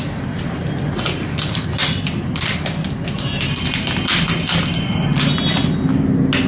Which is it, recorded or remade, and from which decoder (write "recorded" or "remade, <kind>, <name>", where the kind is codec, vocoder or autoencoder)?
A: recorded